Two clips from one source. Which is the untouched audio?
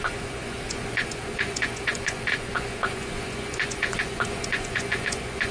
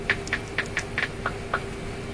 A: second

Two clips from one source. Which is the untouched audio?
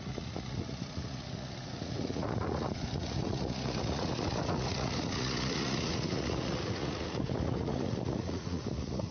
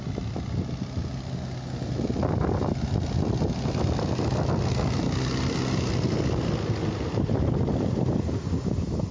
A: second